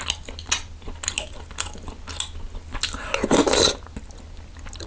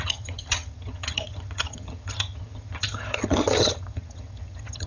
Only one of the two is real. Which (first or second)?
first